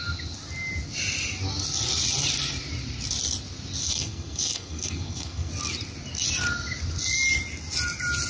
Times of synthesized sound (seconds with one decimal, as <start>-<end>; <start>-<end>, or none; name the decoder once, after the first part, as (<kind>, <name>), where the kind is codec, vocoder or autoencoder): 3.8-5.5 (codec, SNAC)